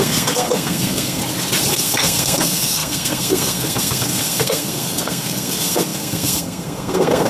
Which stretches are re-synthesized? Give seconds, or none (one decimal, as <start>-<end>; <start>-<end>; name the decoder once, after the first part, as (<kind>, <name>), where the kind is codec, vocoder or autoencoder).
0.0-1.2 (codec, SNAC); 1.7-7.3